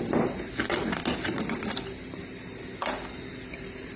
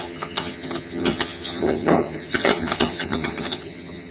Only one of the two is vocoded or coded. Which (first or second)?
second